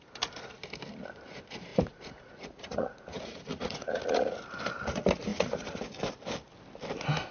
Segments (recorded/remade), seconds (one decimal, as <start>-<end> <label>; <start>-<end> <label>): 0.0-1.7 recorded; 1.7-4.0 remade; 4.0-5.3 recorded; 5.3-5.9 remade; 5.9-7.3 recorded